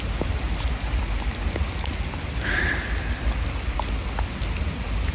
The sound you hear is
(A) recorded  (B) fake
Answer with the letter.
A